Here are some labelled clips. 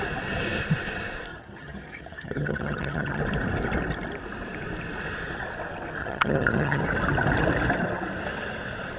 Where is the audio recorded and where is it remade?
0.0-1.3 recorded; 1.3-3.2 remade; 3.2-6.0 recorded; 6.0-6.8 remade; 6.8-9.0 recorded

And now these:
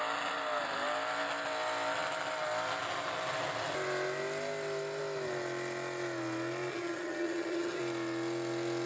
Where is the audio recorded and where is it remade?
0.0-6.7 recorded; 6.7-7.8 remade; 7.8-8.9 recorded

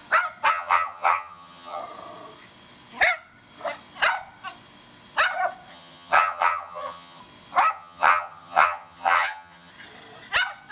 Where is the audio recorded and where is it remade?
0.0-0.5 recorded; 0.5-1.8 remade; 1.8-5.7 recorded; 5.7-7.2 remade; 7.2-7.7 recorded; 7.7-9.7 remade; 9.7-10.7 recorded